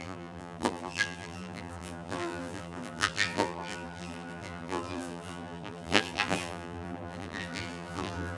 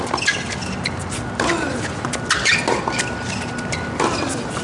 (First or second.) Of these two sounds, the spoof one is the first